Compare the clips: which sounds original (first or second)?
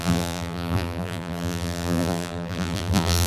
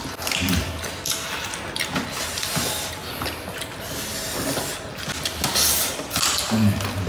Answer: second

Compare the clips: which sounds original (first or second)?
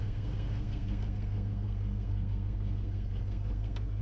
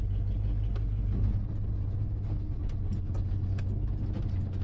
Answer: second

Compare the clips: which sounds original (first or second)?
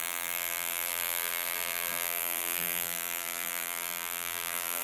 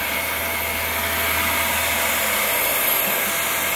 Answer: second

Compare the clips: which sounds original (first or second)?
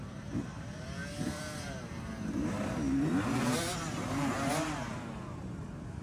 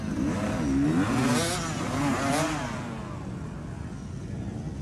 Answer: second